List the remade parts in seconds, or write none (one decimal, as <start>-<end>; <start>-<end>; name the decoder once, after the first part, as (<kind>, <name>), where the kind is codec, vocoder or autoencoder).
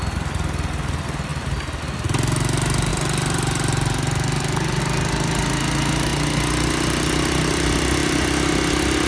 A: none